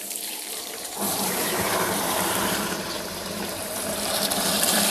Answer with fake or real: fake